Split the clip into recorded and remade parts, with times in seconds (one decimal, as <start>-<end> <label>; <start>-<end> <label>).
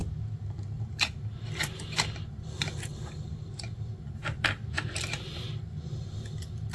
0.0-6.7 recorded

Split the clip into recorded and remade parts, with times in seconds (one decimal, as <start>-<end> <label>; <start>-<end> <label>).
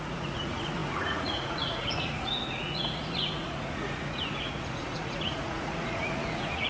0.0-6.7 remade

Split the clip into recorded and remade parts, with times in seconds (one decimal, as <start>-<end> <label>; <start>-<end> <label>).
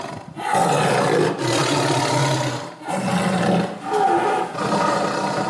0.0-5.5 recorded